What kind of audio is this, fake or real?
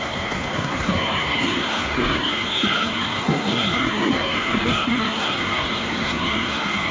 fake